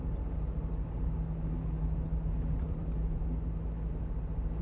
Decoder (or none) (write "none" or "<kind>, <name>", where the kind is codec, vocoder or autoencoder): none